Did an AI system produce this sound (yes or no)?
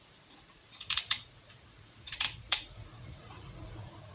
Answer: yes